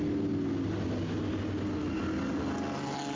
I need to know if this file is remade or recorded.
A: recorded